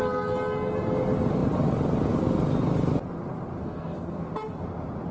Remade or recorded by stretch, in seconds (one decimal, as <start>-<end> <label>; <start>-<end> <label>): 0.0-3.6 recorded; 3.6-4.3 remade; 4.3-5.1 recorded